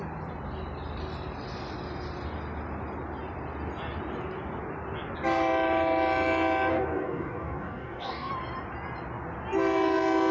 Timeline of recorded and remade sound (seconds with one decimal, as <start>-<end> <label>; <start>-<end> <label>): 0.0-6.7 recorded; 6.7-8.3 remade; 8.3-10.3 recorded